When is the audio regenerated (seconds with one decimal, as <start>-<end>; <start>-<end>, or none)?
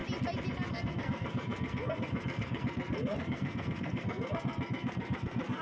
0.7-5.6